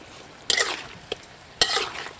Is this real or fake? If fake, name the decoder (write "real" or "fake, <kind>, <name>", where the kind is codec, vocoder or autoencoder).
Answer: real